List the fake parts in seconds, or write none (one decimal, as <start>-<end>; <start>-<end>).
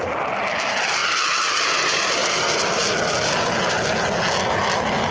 none